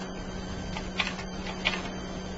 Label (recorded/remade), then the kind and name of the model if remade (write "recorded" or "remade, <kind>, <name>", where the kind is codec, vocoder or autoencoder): recorded